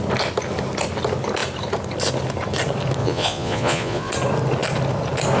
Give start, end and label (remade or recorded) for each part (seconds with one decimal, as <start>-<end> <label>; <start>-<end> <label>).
0.0-3.0 recorded; 3.0-4.1 remade; 4.1-5.4 recorded